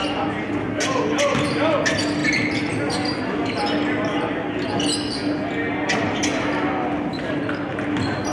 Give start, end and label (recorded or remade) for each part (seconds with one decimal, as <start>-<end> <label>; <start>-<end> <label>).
0.0-2.2 recorded; 2.2-2.8 remade; 2.8-8.3 recorded

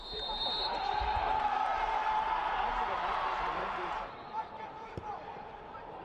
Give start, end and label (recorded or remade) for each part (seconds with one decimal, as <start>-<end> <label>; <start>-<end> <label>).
0.0-6.0 remade

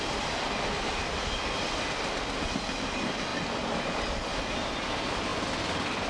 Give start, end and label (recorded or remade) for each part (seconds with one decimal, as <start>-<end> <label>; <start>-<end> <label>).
0.0-6.1 recorded

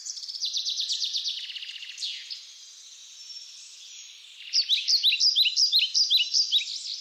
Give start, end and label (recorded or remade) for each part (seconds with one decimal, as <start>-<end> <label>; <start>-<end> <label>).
0.0-1.2 remade; 1.2-7.0 recorded